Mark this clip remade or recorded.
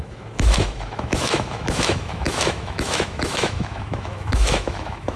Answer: remade